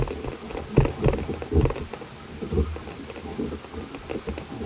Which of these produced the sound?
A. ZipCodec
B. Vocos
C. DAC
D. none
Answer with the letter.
D